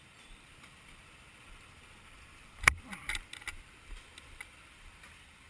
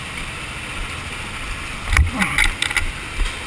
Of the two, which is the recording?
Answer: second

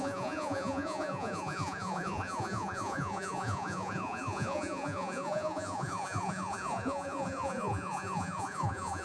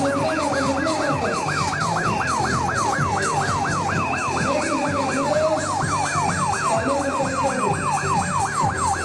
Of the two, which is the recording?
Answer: second